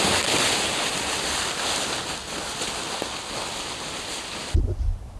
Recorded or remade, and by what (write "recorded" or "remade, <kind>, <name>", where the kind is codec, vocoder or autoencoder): recorded